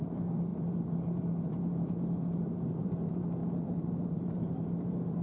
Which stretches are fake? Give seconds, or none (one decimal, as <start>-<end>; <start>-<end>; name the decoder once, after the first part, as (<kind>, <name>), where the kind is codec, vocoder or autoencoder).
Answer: 0.0-5.2 (vocoder, BigVGAN v2)